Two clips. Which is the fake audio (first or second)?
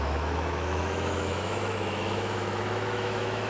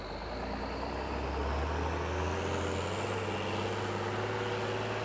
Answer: first